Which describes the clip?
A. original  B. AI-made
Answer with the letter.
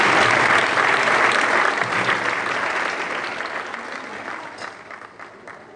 A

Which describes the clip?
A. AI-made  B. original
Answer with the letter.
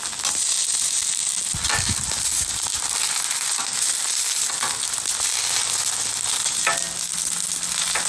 B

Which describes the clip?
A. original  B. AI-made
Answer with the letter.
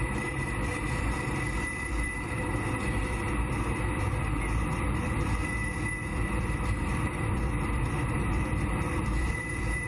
B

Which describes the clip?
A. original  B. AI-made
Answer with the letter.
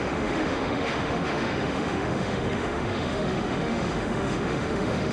B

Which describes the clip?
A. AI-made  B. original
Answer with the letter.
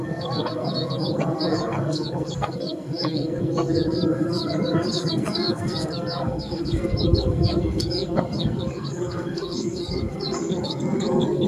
A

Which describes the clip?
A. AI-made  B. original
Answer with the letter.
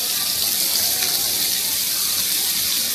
B